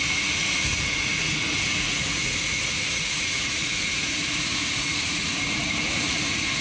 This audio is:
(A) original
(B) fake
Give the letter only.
B